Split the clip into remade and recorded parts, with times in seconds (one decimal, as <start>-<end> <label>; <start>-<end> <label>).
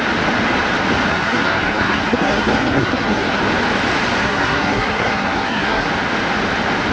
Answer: 0.0-1.1 recorded; 1.1-3.4 remade; 3.4-4.2 recorded; 4.2-5.9 remade; 5.9-6.9 recorded